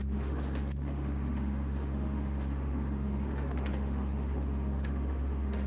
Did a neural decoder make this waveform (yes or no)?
yes